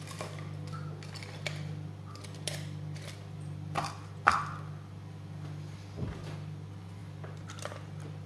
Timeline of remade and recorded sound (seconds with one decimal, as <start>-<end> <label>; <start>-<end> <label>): 0.0-7.0 remade; 7.0-8.3 recorded